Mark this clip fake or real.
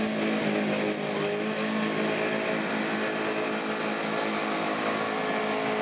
real